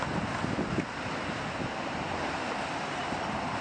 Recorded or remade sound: recorded